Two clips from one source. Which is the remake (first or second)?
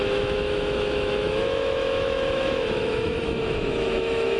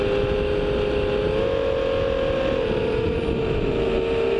first